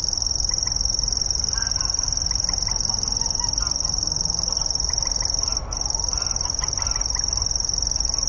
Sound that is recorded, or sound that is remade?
recorded